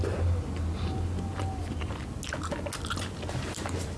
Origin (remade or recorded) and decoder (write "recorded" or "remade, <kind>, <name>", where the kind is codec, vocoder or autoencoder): recorded